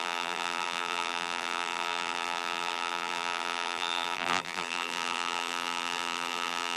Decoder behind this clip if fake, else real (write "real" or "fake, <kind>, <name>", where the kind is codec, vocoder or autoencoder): fake, vocoder, BigVGAN v2